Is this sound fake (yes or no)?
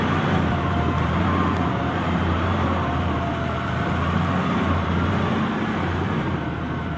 yes